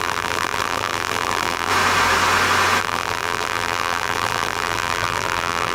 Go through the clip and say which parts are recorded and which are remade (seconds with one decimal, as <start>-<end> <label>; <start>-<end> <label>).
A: 0.0-1.7 remade; 1.7-2.8 recorded; 2.8-5.7 remade